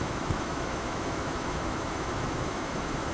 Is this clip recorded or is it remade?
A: remade